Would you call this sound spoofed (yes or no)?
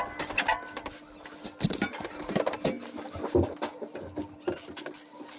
no